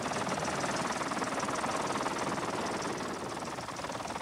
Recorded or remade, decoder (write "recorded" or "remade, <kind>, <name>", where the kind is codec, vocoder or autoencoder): recorded